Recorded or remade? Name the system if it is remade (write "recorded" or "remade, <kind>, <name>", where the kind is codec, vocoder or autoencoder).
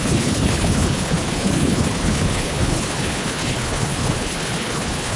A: remade, codec, HILCodec